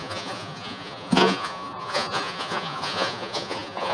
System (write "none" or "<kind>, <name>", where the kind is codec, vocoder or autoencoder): vocoder, Vocos